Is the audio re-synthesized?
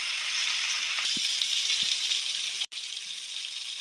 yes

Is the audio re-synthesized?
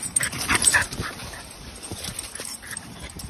yes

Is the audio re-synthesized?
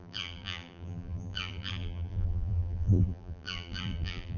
yes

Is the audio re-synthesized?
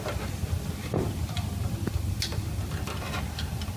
yes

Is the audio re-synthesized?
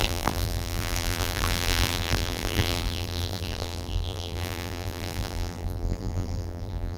yes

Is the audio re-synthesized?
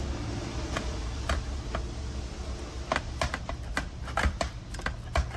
no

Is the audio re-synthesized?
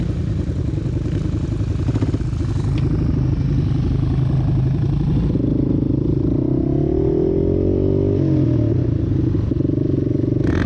no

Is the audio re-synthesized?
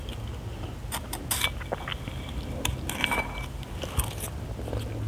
no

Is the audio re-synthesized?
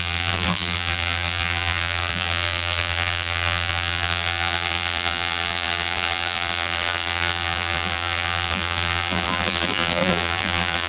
yes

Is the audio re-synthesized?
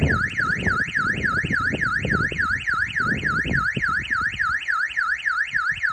no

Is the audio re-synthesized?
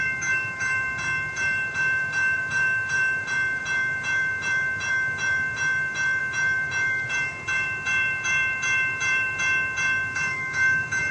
yes